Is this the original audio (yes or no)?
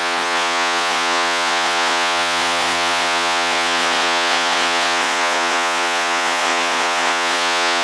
no